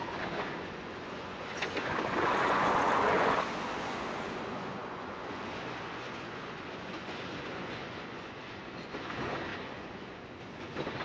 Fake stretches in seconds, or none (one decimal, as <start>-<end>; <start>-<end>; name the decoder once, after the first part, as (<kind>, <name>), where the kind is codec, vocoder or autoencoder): 0.0-11.0 (vocoder, Vocos)